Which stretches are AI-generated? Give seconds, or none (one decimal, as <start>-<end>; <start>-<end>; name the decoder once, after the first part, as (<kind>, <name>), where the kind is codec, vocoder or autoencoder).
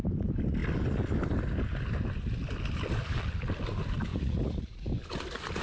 4.1-4.9 (vocoder, Vocos)